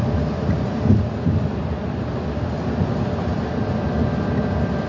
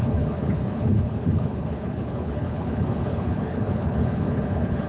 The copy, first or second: second